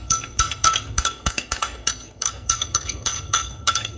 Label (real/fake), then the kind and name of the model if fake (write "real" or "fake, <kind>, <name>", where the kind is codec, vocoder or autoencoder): fake, codec, SNAC